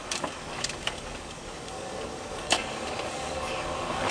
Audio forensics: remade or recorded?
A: remade